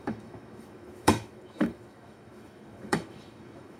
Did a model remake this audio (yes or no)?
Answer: yes